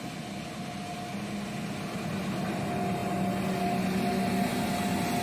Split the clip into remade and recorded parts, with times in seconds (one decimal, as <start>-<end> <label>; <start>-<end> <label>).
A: 0.0-5.2 recorded